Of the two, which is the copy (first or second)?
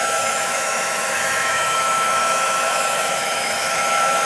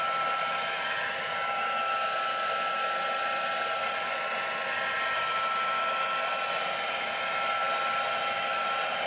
first